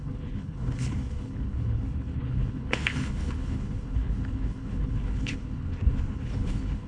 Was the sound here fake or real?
fake